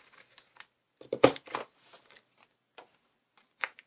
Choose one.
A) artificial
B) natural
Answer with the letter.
B